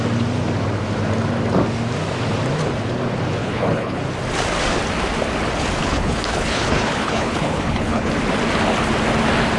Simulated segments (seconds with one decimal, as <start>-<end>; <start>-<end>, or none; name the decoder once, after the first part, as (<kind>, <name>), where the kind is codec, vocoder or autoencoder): 3.4-4.0 (codec, HILCodec); 5.8-8.1